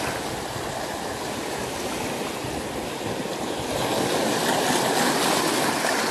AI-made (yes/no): no